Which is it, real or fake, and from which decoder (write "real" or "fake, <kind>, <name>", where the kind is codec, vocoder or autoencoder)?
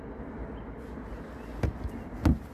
real